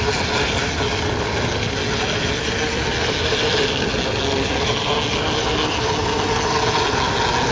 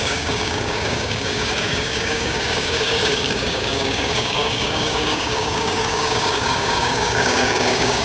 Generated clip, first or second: second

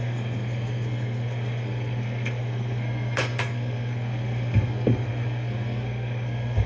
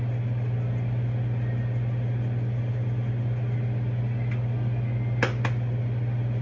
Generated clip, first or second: first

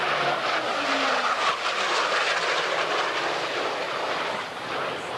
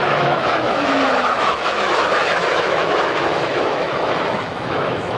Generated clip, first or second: second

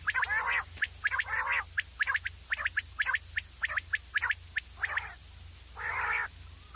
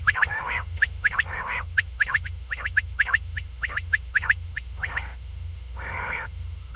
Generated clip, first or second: second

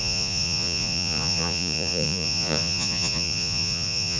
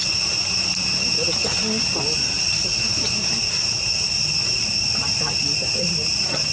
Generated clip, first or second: first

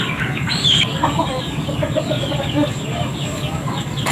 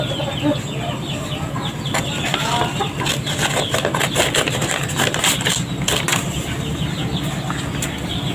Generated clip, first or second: first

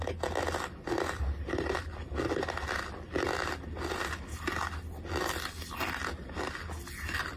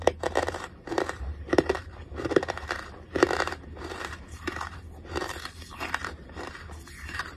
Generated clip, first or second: second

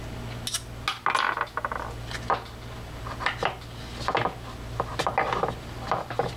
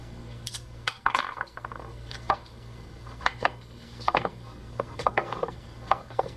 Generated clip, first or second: second